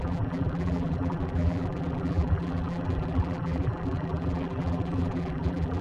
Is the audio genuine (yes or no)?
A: no